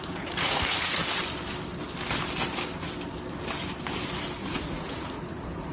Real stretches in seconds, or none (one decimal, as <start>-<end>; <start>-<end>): 1.0-4.4